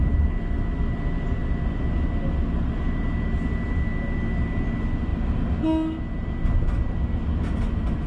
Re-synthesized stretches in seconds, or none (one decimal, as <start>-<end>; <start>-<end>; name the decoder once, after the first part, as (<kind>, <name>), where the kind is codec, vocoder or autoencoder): none